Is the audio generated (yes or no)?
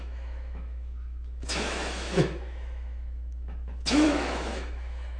yes